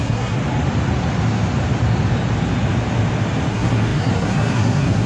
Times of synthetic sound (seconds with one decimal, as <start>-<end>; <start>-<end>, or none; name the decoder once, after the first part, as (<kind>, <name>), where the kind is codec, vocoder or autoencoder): 0.0-0.4 (codec, SNAC); 3.5-5.1

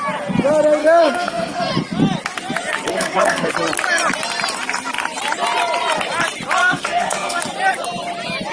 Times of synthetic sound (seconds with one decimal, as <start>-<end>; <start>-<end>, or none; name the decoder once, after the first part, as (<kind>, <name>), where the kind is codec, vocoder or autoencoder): 0.8-1.7 (codec, SNAC); 2.9-3.5; 6.6-7.4

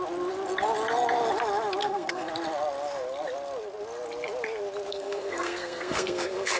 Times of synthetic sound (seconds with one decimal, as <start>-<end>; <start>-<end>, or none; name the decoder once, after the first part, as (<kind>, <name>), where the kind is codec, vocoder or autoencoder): 1.8-2.3 (codec, SNAC); 4.9-6.6